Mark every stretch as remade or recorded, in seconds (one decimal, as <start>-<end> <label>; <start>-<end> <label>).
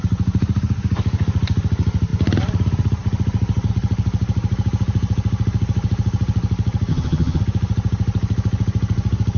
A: 0.0-6.9 recorded; 6.9-7.4 remade; 7.4-9.4 recorded